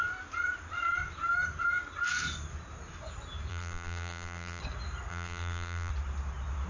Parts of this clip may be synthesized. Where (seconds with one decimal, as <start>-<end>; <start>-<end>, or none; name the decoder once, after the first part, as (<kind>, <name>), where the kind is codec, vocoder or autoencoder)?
3.5-4.6 (vocoder, BigVGAN v2); 5.1-5.9